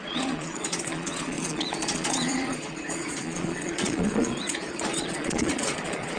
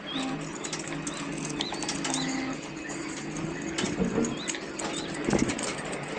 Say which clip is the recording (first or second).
second